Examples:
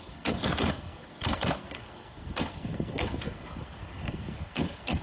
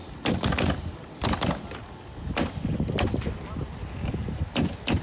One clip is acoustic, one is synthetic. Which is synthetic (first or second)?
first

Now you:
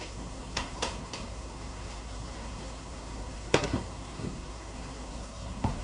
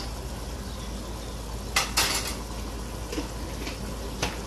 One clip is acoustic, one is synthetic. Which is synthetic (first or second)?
first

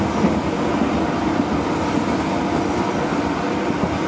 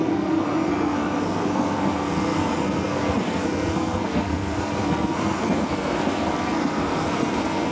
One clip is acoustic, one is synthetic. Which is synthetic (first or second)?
second